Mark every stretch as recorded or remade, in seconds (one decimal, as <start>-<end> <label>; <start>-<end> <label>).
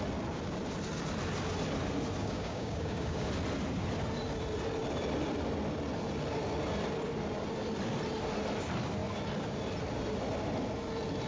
0.0-2.2 recorded; 2.2-3.3 remade; 3.3-11.3 recorded